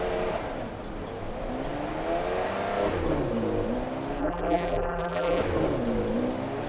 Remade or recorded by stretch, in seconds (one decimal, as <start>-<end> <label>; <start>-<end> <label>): 0.0-4.2 recorded; 4.2-5.4 remade; 5.4-6.7 recorded